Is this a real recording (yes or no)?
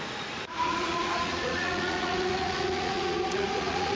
no